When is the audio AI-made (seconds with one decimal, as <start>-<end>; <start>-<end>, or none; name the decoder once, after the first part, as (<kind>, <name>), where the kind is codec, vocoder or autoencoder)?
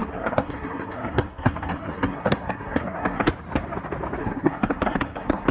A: 0.0-3.3 (codec, SNAC); 4.2-5.5